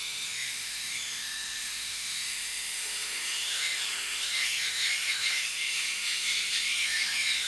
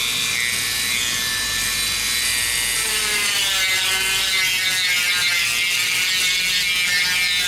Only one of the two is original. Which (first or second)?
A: second